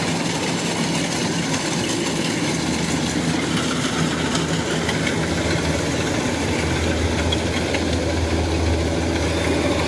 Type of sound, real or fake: real